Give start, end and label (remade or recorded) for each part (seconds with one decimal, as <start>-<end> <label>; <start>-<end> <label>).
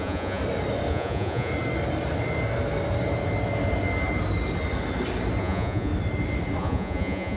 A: 0.0-0.4 remade; 0.4-0.9 recorded; 0.9-1.5 remade; 1.5-5.4 recorded; 5.4-5.9 remade; 5.9-6.6 recorded; 6.6-7.4 remade